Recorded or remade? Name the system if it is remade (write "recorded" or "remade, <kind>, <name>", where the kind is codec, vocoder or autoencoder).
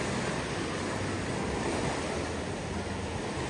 recorded